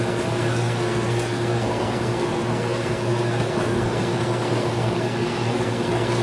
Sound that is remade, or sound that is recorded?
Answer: remade